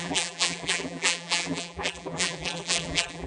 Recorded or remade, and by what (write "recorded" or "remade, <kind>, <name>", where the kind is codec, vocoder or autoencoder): remade, vocoder, BigVGAN v2